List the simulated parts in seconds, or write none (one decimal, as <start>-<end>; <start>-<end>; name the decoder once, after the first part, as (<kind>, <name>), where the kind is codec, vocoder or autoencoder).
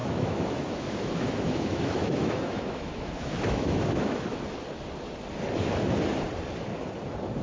0.0-4.4 (autoencoder, DAC-VAE)